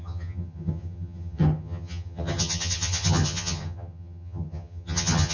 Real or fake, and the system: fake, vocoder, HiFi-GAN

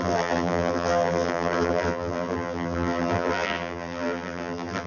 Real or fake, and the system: fake, vocoder, BigVGAN v2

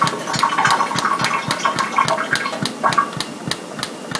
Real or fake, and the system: real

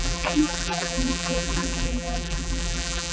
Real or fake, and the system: fake, vocoder, BigVGAN v2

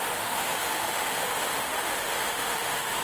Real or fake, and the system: fake, autoencoder, DAC-VAE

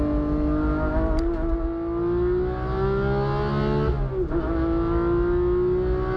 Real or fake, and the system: real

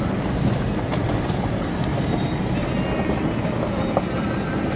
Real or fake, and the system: real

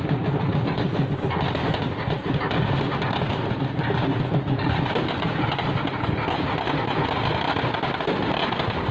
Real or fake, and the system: real